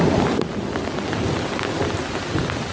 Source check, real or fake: real